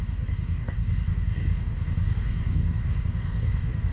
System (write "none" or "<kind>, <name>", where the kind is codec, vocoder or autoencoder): codec, DAC